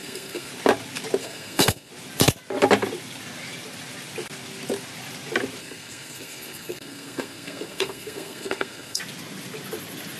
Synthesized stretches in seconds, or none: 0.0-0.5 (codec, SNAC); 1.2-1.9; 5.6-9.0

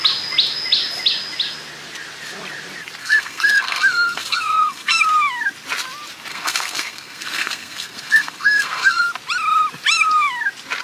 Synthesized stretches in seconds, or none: 3.0-5.0 (codec, SNAC); 6.3-9.0